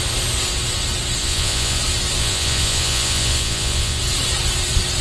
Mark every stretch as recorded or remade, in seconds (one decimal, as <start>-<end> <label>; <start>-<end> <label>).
0.0-1.2 recorded; 1.2-1.8 remade; 1.8-2.2 recorded; 2.2-4.0 remade; 4.0-5.0 recorded